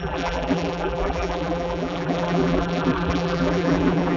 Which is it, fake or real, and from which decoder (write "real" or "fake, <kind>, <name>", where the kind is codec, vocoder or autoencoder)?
fake, vocoder, BigVGAN v2